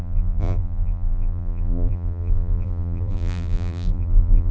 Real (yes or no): no